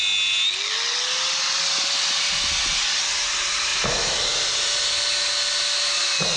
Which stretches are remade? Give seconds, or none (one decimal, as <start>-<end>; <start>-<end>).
none